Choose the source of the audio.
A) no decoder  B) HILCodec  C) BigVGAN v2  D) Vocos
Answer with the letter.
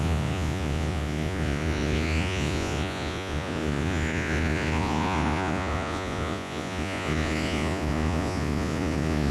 D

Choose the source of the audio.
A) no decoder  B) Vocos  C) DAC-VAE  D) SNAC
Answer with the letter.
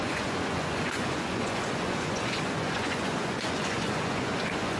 B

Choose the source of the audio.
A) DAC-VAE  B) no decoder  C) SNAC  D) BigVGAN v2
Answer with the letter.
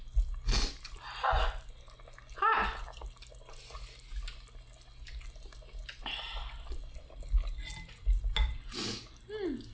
B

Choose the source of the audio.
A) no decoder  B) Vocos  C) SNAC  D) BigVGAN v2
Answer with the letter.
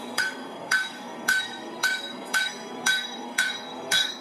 C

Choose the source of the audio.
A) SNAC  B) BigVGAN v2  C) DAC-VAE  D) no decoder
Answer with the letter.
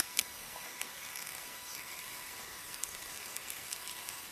A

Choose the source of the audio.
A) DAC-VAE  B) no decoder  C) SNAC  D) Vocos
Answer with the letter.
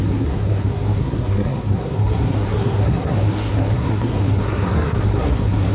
C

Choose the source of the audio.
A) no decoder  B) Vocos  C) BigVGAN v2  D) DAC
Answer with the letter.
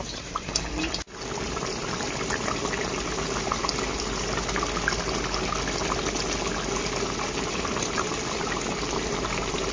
A